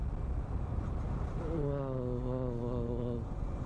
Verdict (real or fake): real